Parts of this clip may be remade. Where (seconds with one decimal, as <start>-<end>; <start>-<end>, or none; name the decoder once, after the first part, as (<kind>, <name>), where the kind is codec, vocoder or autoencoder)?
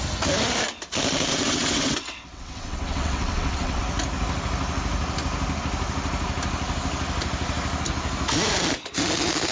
1.3-3.8 (vocoder, WaveNeXt)